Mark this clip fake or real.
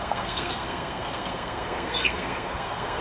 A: fake